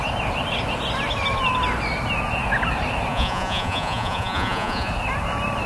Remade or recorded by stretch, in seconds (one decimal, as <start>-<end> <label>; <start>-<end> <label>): 0.0-3.1 recorded; 3.1-4.9 remade; 4.9-5.7 recorded